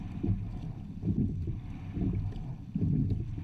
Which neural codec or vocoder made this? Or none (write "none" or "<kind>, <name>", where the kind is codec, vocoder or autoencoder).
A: none